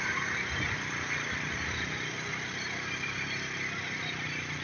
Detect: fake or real real